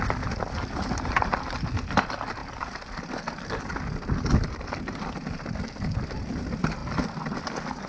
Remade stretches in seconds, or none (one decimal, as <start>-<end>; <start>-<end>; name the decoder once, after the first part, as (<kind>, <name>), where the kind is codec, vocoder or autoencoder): none